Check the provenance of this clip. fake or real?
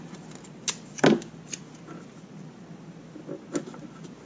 real